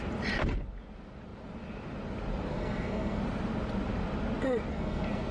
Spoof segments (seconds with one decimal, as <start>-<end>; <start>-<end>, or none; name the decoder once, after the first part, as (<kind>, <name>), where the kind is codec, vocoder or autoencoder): 2.5-3.2 (codec, SNAC); 4.7-5.3